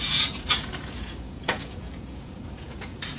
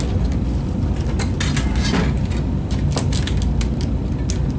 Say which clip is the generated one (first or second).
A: first